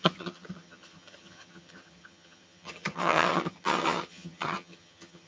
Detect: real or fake fake